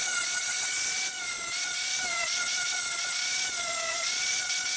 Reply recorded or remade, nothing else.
remade